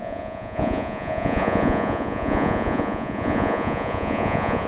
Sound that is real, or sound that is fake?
fake